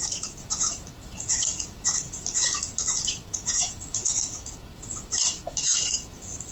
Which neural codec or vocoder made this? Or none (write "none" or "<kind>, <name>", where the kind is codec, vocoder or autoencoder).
autoencoder, DAC-VAE